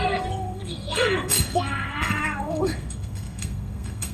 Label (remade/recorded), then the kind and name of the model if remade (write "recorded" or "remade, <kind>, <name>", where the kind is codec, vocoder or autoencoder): remade, codec, SNAC